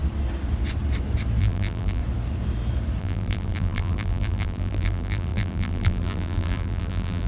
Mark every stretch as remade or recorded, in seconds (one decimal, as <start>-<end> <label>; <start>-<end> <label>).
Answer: 0.0-1.4 recorded; 1.4-2.0 remade; 2.0-3.0 recorded; 3.0-7.3 remade